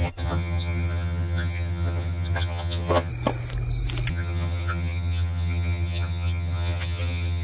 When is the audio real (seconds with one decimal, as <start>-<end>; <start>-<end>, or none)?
3.1-4.1